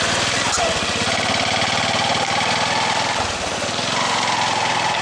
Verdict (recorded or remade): recorded